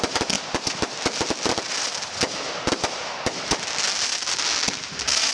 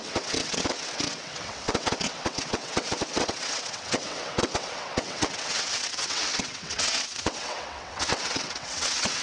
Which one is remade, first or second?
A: second